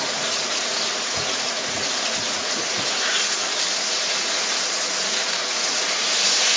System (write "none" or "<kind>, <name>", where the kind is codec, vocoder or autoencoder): vocoder, Vocos